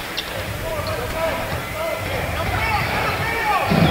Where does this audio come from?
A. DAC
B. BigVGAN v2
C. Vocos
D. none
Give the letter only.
B